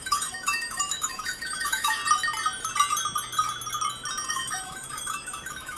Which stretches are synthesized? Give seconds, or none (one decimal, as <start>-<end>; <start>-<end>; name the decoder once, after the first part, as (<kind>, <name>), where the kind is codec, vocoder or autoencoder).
0.0-2.0 (autoencoder, DAC-VAE); 4.3-5.8